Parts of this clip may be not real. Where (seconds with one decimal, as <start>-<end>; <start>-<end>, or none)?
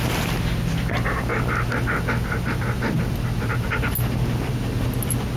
none